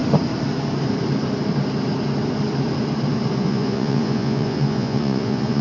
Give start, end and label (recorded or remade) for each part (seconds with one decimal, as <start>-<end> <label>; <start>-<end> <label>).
0.0-3.4 recorded; 3.4-5.6 remade